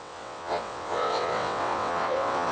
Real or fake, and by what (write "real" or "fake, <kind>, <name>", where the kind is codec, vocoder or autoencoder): fake, vocoder, WaveNeXt